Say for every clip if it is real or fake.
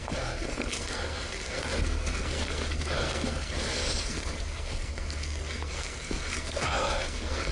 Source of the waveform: fake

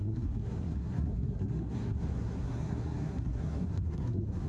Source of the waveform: fake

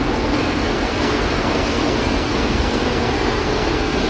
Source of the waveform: fake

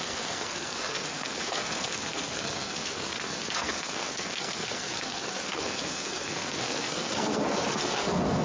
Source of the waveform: fake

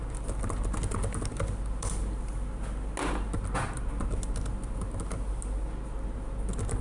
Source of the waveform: real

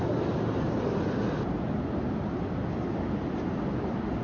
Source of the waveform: real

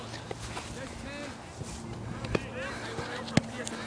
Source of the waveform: real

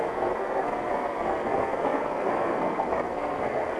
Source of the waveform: fake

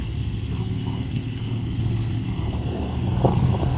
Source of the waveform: fake